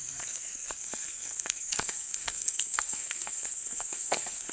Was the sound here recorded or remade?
remade